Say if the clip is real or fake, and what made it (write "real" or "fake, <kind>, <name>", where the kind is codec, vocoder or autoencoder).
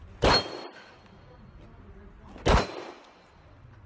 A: real